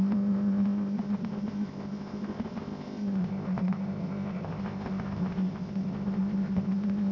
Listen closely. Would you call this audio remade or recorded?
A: remade